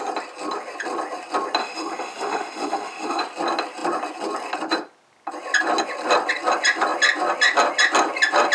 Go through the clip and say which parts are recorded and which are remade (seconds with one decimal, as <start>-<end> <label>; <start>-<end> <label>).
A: 0.0-1.6 recorded; 1.6-3.2 remade; 3.2-8.5 recorded